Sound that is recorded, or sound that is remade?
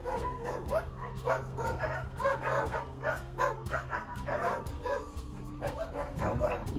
remade